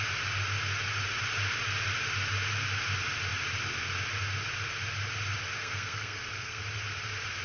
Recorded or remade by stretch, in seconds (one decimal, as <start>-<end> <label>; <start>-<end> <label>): 0.0-5.6 recorded; 5.6-6.6 remade; 6.6-7.4 recorded